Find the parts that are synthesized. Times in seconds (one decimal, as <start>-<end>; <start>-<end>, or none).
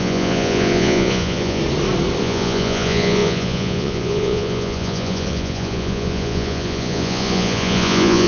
0.0-1.6; 2.2-8.3